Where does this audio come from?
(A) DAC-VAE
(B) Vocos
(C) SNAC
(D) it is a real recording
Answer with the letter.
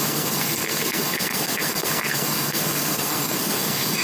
C